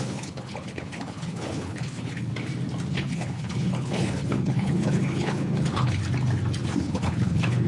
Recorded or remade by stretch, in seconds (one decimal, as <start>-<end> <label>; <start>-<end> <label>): 0.0-2.3 remade; 2.3-2.9 recorded; 2.9-6.0 remade; 6.0-6.8 recorded; 6.8-7.7 remade